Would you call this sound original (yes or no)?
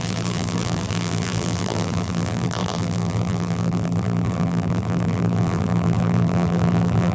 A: no